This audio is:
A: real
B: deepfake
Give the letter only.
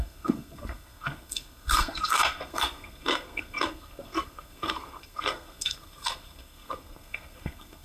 B